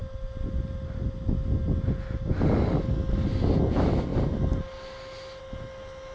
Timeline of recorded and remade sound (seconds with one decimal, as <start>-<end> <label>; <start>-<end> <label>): 0.0-6.1 recorded